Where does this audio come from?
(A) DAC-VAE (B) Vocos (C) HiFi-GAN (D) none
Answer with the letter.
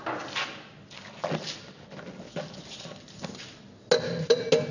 D